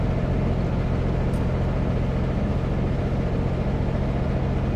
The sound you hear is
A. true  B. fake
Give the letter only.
A